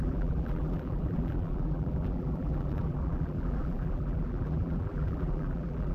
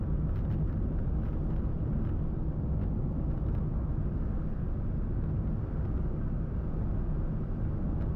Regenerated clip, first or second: first